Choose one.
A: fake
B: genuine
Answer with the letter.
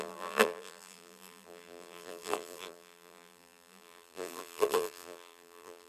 A